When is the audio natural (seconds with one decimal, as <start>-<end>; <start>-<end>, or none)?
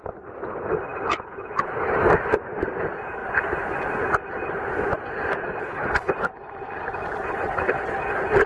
0.0-5.6; 6.1-8.5